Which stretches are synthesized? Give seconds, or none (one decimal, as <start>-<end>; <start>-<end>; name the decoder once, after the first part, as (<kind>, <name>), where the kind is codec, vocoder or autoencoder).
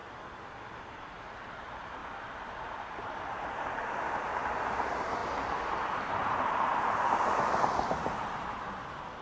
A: 0.8-2.0 (vocoder, BigVGAN v2); 2.5-5.2; 6.1-9.2